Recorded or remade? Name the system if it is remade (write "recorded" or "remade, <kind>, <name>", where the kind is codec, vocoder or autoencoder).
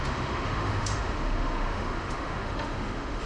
remade, autoencoder, DAC-VAE